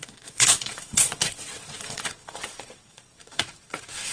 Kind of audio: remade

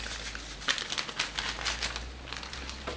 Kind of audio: recorded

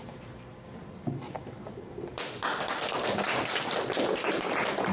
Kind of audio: recorded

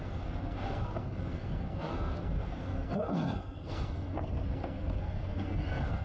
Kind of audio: remade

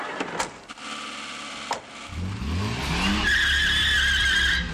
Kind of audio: recorded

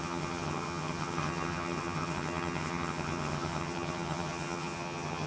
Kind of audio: remade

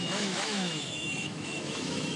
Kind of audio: remade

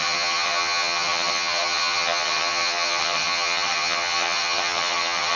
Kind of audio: remade